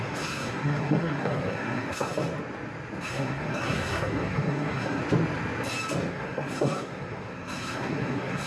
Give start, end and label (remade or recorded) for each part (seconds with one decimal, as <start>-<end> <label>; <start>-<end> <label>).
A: 0.0-2.1 remade; 2.1-3.0 recorded; 3.0-5.0 remade; 5.0-6.1 recorded; 6.1-8.5 remade